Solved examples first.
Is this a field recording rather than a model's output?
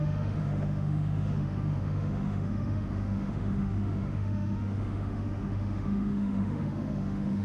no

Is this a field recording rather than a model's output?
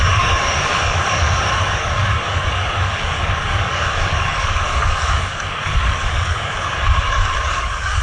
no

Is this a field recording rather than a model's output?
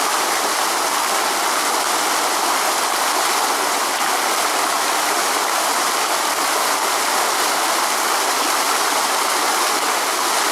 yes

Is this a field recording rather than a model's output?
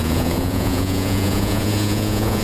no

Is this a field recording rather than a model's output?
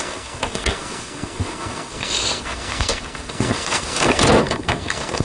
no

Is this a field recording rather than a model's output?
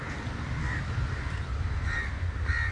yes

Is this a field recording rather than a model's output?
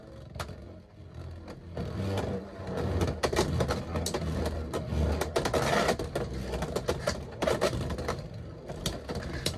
yes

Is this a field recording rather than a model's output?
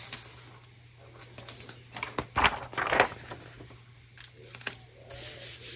yes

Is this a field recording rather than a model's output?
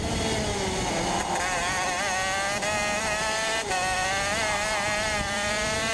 yes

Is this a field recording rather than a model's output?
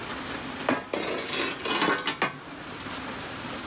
yes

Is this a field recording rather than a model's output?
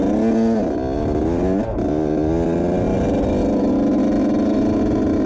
yes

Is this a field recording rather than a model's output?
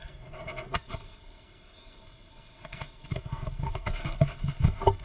no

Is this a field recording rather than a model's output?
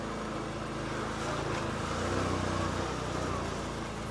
yes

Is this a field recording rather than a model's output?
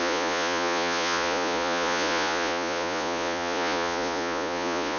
no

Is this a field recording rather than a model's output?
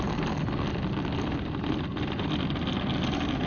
yes